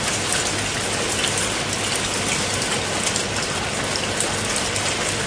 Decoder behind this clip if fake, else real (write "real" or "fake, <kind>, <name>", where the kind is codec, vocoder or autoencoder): real